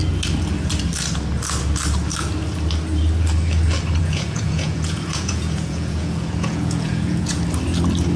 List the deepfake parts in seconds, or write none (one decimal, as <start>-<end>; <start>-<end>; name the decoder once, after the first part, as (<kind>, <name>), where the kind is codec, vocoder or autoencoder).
4.0-7.4 (vocoder, Vocos)